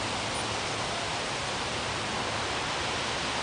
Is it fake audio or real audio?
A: real